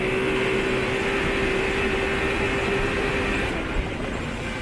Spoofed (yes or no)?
no